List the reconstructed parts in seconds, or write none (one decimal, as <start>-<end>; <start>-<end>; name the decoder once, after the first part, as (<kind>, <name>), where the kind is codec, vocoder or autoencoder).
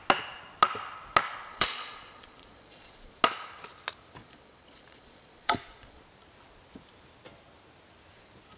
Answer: 1.5-3.2 (vocoder, Vocos); 4.2-6.0